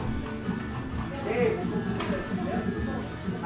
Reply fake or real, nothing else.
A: real